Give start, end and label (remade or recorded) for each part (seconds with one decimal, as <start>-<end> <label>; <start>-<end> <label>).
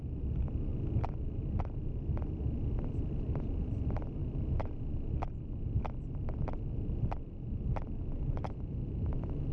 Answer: 0.0-0.7 remade; 0.7-1.6 recorded; 1.6-4.2 remade; 4.2-6.7 recorded; 6.7-9.5 remade